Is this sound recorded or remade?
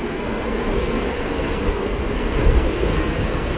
remade